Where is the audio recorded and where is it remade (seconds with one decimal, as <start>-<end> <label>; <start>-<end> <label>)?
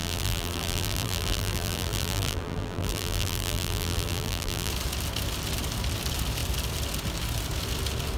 0.0-4.7 remade; 4.7-8.2 recorded